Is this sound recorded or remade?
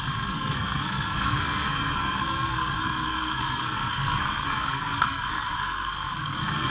remade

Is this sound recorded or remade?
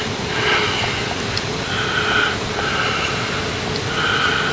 recorded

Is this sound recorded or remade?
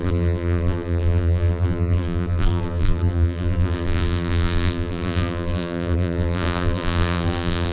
remade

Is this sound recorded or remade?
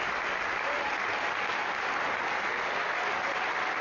recorded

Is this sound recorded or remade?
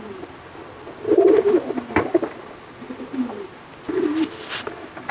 recorded